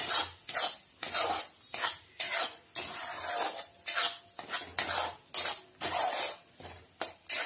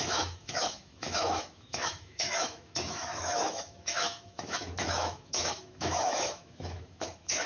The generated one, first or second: second